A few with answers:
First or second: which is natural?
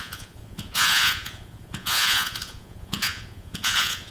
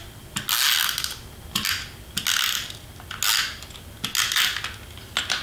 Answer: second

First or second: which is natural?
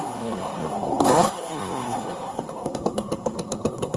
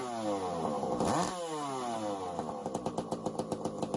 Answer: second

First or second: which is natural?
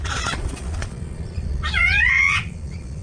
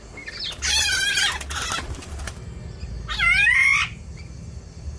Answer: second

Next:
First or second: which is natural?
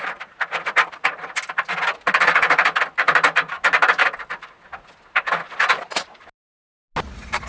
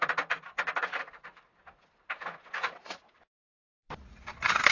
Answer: first